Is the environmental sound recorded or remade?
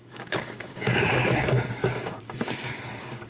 remade